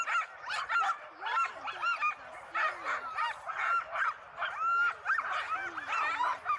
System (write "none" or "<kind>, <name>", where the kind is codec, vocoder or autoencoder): none